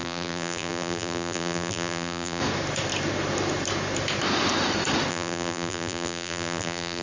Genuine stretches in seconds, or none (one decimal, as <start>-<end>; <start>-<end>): 2.4-5.1